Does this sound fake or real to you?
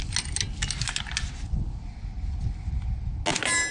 real